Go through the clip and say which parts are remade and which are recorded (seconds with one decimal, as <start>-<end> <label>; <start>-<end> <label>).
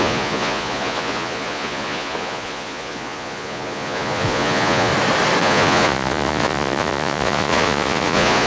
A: 0.0-4.9 remade; 4.9-5.4 recorded; 5.4-8.5 remade